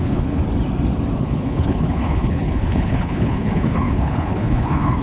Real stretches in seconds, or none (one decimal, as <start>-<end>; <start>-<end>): 0.4-1.2